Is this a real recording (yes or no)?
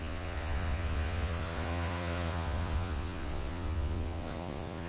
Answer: no